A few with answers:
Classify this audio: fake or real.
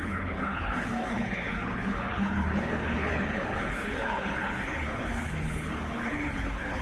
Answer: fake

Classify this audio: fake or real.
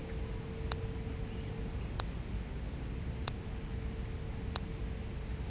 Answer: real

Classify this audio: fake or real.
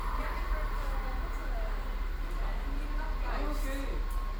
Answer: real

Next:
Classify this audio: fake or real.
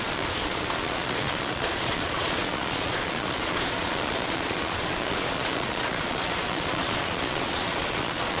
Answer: fake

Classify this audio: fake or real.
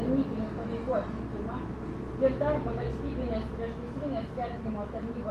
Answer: fake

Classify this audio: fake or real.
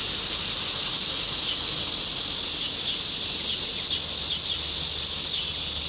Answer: real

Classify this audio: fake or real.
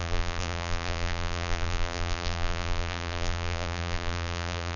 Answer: fake